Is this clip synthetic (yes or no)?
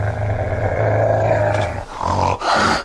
no